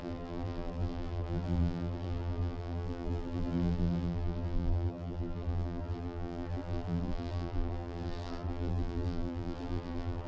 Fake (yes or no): yes